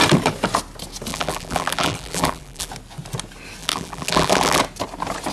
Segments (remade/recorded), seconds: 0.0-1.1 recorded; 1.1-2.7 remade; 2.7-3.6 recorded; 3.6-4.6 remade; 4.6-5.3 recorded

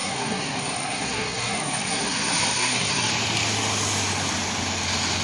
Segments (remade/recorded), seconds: 0.0-3.1 remade; 3.1-5.2 recorded

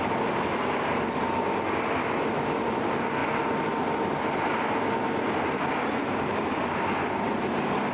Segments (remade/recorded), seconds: 0.0-7.9 recorded

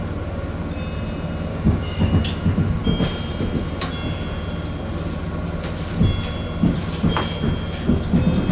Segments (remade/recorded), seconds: 0.0-1.5 recorded; 1.5-2.1 remade; 2.1-8.5 recorded

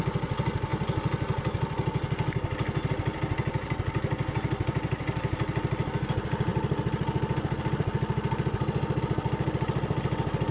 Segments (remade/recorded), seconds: 0.0-10.5 recorded

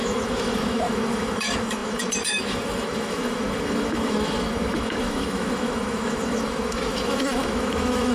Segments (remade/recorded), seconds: 0.0-8.1 remade

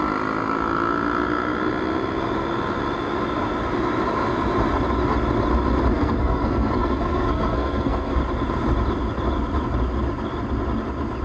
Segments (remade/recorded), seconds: 0.0-5.9 recorded; 5.9-8.2 remade; 8.2-11.2 recorded